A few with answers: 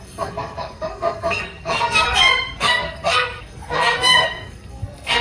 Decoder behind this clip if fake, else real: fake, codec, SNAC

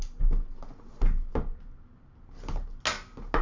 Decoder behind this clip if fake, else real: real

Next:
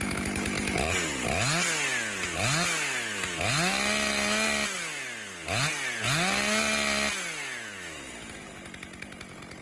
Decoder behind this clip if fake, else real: real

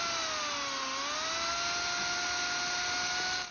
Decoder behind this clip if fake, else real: real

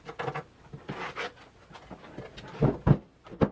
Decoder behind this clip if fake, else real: real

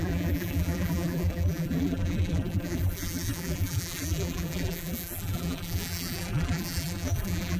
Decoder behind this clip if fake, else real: fake, vocoder, BigVGAN v2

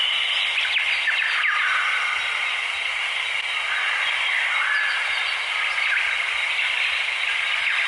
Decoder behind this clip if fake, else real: real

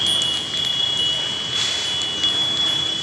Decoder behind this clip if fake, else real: real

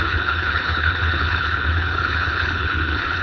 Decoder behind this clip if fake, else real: fake, codec, HILCodec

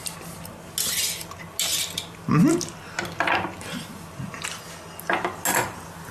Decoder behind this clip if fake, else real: real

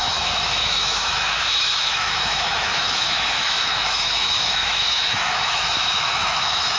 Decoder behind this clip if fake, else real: fake, autoencoder, DAC-VAE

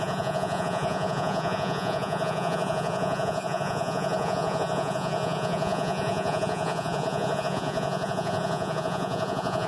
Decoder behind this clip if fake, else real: fake, vocoder, Vocos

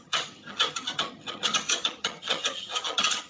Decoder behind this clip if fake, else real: fake, vocoder, HiFi-GAN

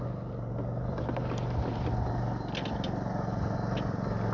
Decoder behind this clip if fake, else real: real